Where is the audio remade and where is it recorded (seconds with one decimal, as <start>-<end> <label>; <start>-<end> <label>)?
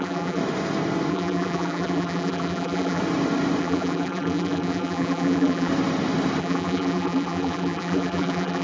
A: 0.0-0.4 remade; 0.4-1.1 recorded; 1.1-3.0 remade; 3.0-3.6 recorded; 3.6-5.7 remade; 5.7-6.4 recorded; 6.4-8.6 remade